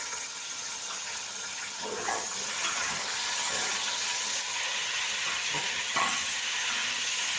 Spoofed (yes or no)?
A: yes